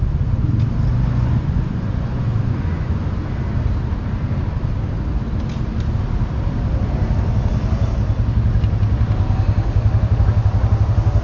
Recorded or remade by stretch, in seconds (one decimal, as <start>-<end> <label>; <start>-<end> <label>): 0.0-0.9 recorded; 0.9-3.0 remade; 3.0-11.2 recorded